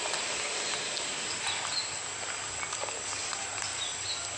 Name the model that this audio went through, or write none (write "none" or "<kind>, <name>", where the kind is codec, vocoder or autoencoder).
none